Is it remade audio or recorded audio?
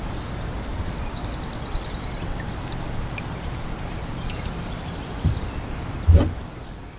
remade